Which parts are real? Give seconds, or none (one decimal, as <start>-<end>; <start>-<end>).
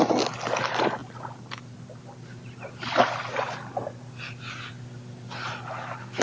0.0-6.2